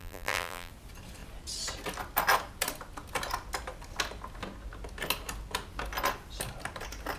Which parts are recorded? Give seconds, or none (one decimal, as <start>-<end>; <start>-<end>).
0.7-7.2